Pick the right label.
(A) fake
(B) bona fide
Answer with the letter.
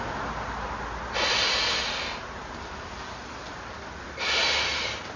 B